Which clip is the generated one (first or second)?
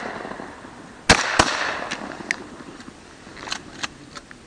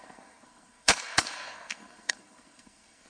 second